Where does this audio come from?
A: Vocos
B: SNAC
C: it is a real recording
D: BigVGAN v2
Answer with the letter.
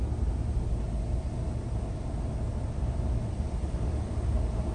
C